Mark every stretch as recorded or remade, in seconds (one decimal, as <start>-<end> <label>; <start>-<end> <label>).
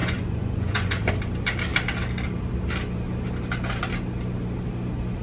0.0-1.1 remade; 1.1-5.2 recorded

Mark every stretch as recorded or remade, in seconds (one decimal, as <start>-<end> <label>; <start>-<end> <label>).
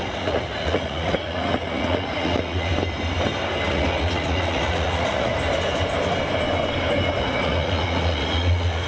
0.0-2.7 remade; 2.7-3.7 recorded; 3.7-5.3 remade; 5.3-7.2 recorded; 7.2-8.9 remade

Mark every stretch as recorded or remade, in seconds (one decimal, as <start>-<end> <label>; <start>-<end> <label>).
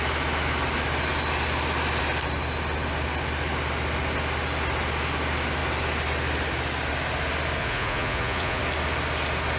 0.0-7.6 recorded; 7.6-8.6 remade; 8.6-9.6 recorded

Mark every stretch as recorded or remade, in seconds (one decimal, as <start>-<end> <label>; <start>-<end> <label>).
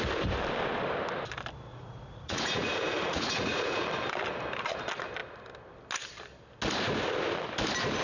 0.0-1.7 recorded; 1.7-3.8 remade; 3.8-8.0 recorded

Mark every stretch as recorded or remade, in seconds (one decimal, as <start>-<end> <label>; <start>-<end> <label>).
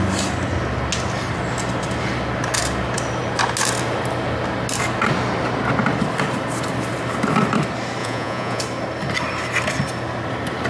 0.0-8.0 recorded; 8.0-8.6 remade; 8.6-10.7 recorded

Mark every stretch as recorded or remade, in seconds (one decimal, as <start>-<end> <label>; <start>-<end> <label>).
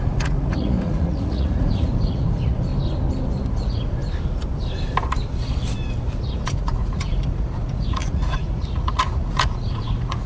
0.0-2.7 remade; 2.7-3.5 recorded; 3.5-4.0 remade; 4.0-6.3 recorded; 6.3-10.3 remade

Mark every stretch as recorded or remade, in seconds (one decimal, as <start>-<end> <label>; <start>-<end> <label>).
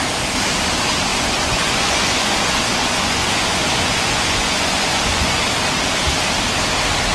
0.0-1.1 recorded; 1.1-5.4 remade; 5.4-7.1 recorded